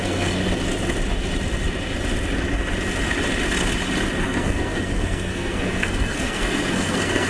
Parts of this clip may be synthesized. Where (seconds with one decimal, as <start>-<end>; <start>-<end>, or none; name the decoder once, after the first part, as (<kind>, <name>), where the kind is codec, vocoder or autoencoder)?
0.0-0.4 (codec, SNAC); 4.2-7.3